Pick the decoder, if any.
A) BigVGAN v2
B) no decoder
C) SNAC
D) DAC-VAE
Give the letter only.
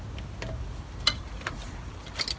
B